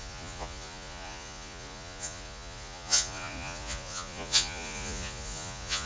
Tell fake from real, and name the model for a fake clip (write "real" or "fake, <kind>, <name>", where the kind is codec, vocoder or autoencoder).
fake, vocoder, Vocos